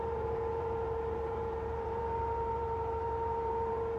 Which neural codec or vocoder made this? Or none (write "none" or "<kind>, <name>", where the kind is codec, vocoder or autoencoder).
vocoder, BigVGAN v2